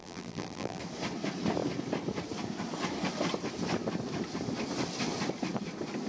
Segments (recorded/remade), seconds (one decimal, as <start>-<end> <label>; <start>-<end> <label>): 0.0-0.8 remade; 0.8-6.1 recorded